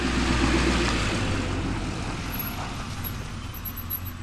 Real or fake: real